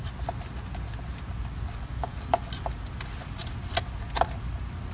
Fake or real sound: real